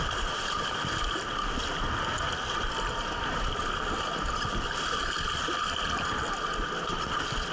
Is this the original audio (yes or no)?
yes